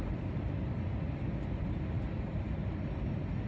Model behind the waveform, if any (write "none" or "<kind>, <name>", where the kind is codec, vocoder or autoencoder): none